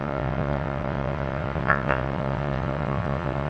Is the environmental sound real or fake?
fake